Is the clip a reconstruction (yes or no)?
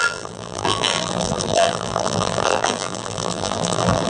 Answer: yes